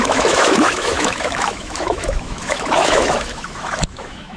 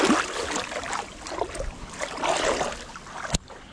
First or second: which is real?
second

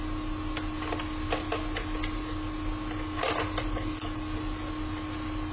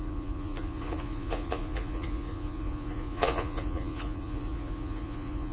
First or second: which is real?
first